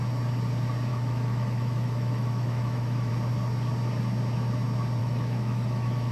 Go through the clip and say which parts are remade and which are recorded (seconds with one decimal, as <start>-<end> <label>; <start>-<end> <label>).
0.0-0.9 recorded; 0.9-3.1 remade; 3.1-5.0 recorded; 5.0-6.1 remade